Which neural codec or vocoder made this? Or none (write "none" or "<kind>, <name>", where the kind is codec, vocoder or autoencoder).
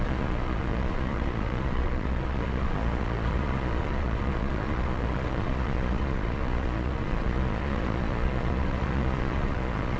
vocoder, Vocos